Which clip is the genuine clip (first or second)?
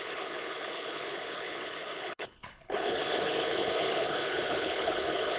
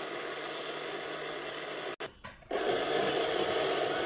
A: second